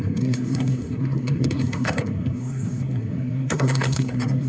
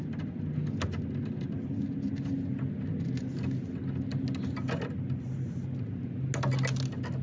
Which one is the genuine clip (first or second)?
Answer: second